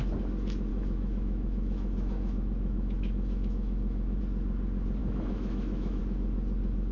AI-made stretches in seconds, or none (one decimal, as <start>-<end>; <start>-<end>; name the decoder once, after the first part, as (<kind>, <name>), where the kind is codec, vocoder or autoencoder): 0.7-4.2 (autoencoder, DAC-VAE); 5.0-6.0